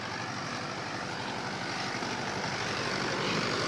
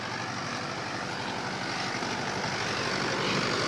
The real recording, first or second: second